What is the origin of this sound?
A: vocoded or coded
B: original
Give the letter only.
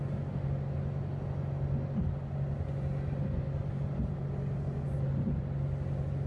B